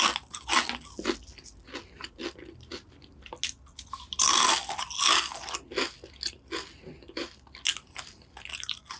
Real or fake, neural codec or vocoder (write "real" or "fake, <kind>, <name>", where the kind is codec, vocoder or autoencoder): real